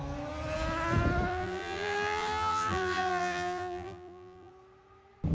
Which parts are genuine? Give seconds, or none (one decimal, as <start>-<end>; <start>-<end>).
0.0-1.3; 4.5-5.3